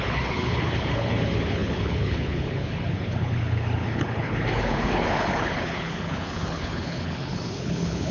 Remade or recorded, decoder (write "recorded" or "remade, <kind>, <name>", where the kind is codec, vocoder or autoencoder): remade, codec, HILCodec